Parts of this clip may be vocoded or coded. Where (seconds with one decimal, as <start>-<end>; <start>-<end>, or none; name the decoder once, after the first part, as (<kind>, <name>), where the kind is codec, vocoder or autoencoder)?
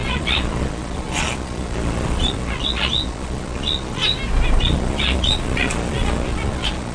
0.0-4.0 (vocoder, Vocos); 4.6-6.9